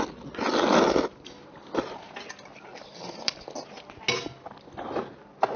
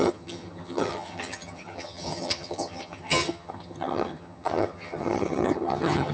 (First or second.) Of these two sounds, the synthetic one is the second